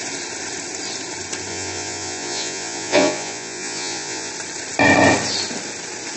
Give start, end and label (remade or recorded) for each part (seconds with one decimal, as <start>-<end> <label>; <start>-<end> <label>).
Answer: 0.0-1.5 recorded; 1.5-4.3 remade; 4.3-6.2 recorded

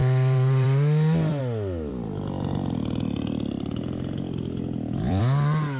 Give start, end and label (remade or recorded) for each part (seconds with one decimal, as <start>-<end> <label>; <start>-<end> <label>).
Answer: 0.0-1.4 remade; 1.4-1.9 recorded; 1.9-5.2 remade; 5.2-5.8 recorded

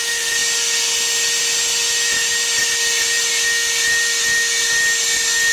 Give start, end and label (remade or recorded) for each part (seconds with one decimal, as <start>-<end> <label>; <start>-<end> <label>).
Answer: 0.0-5.5 recorded

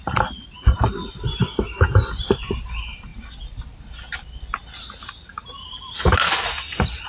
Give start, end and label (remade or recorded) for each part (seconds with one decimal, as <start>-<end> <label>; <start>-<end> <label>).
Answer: 0.0-7.1 recorded

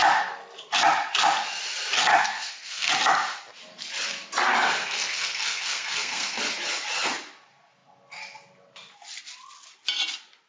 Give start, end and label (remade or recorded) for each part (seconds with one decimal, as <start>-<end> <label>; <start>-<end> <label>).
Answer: 0.0-2.1 recorded; 2.1-2.9 remade; 2.9-4.8 recorded; 4.8-6.4 remade; 6.4-10.5 recorded